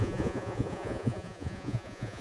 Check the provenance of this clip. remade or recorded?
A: remade